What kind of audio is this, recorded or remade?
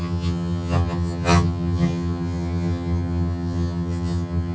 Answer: remade